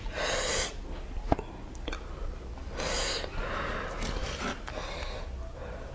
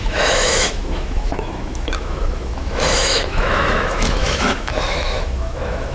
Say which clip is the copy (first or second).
second